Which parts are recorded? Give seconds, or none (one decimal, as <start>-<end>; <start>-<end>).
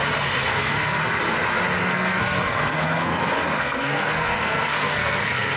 0.0-0.5; 1.0-1.8